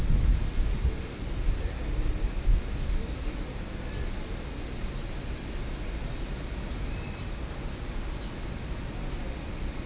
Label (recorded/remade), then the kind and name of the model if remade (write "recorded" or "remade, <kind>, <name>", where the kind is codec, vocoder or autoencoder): recorded